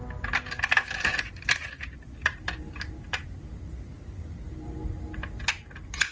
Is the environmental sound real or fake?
real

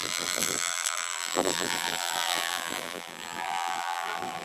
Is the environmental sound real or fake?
fake